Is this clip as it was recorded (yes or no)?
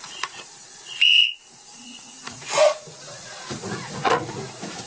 no